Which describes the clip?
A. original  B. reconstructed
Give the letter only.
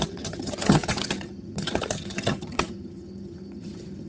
B